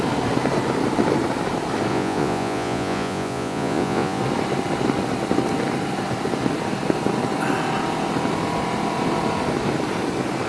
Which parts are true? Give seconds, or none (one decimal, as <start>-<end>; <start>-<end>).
0.0-1.9; 4.2-10.5